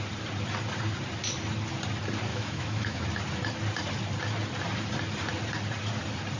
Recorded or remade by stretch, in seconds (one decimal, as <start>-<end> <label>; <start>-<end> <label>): 0.0-2.3 recorded; 2.3-3.0 remade; 3.0-6.4 recorded